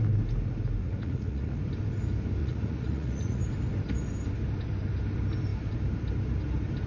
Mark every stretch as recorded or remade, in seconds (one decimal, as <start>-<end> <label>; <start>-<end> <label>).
0.0-0.8 recorded; 0.8-1.6 remade; 1.6-2.4 recorded; 2.4-3.4 remade; 3.4-6.9 recorded